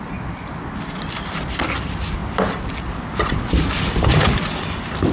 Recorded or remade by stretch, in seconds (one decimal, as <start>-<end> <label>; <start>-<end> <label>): 0.0-5.1 recorded